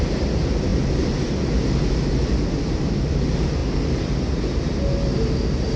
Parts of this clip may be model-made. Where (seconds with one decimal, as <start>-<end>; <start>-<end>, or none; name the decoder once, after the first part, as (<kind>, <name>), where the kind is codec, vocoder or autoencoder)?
none

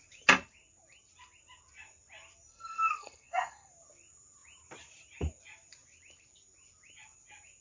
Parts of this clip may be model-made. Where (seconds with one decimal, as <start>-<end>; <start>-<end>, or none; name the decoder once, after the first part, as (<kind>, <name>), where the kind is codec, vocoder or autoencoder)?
2.5-3.7 (codec, SNAC)

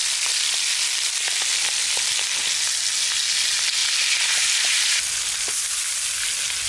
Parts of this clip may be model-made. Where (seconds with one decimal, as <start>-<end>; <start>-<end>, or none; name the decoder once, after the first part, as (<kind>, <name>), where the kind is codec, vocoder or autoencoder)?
none

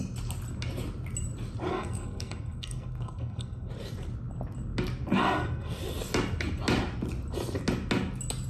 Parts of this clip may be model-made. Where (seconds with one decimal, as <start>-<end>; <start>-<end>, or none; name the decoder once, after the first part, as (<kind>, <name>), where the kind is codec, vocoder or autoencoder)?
1.7-3.7 (codec, SNAC); 5.2-5.8

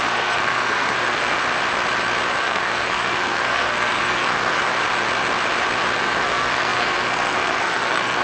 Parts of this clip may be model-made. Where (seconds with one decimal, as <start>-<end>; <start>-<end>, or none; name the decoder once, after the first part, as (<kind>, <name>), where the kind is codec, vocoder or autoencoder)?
0.0-1.4 (codec, SNAC); 2.4-4.6; 6.0-8.2